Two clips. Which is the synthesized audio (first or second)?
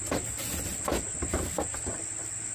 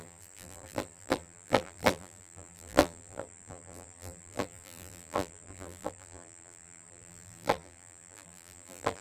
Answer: second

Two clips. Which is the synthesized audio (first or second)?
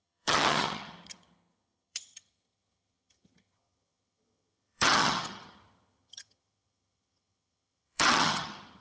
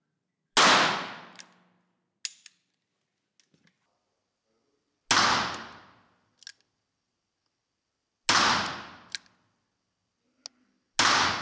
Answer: first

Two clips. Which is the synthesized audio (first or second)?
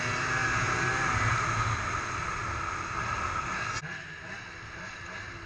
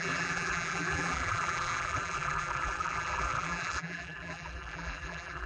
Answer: second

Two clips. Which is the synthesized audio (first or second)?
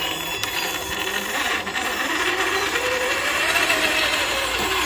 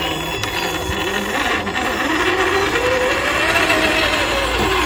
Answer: first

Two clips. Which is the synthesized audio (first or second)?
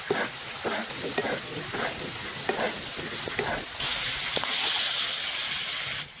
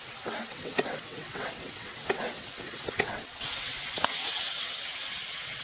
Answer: second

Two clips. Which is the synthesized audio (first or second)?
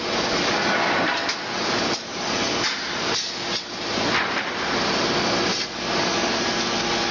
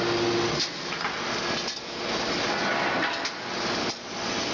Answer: first